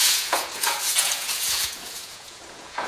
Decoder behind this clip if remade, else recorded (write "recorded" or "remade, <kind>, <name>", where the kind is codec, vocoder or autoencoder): remade, vocoder, Vocos